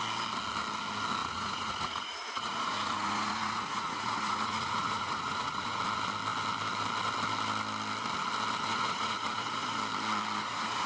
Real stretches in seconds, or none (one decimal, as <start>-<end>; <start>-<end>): 0.0-1.2; 5.8-8.7; 9.8-10.4